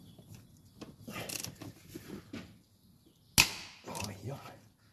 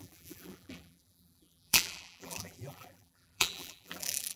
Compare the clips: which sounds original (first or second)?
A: first